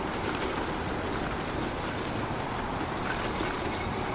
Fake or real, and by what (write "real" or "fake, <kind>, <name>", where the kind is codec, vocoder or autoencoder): real